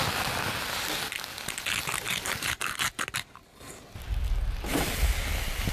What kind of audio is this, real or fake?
real